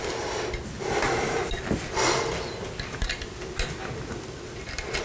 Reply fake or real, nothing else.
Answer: real